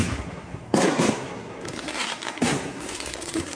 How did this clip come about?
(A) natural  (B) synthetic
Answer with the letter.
B